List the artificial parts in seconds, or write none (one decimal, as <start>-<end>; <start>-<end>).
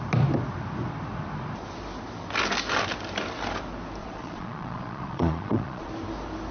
4.0-5.9